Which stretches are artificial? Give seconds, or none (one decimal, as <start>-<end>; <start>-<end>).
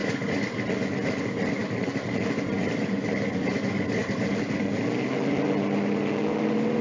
none